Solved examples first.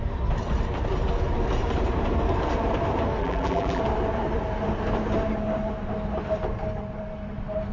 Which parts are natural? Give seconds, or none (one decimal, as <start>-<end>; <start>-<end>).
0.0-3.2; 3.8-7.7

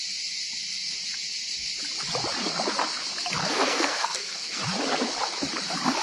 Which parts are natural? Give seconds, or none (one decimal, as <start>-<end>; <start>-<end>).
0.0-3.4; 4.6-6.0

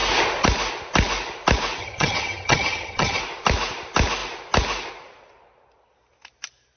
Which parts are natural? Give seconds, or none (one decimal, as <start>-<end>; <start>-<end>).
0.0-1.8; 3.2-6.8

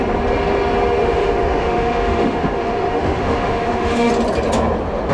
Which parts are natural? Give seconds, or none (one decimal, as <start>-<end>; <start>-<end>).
0.0-1.0; 4.1-5.1